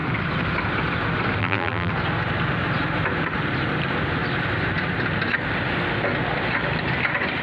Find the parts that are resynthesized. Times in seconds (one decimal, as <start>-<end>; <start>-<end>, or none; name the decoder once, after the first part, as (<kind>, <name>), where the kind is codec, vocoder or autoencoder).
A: 1.4-1.9 (vocoder, BigVGAN v2)